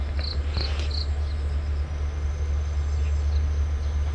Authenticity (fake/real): real